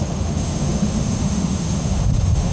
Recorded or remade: remade